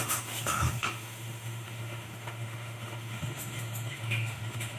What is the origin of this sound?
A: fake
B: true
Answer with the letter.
A